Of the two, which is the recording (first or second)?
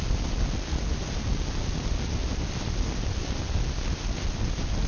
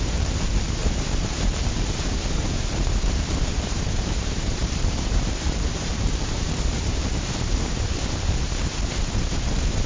first